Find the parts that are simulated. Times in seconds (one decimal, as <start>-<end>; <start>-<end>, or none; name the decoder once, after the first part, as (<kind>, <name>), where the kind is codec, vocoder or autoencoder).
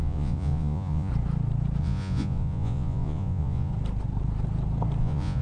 0.0-1.1 (vocoder, Vocos); 1.8-3.7; 5.0-5.4